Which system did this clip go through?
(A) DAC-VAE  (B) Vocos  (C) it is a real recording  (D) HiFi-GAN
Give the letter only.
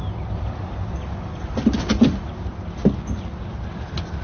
C